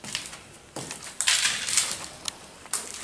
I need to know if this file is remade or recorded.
recorded